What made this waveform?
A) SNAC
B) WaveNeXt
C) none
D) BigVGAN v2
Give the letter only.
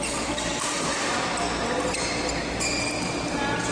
C